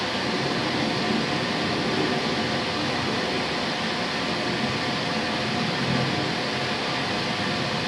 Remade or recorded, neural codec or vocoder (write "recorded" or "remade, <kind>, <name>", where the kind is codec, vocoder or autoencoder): recorded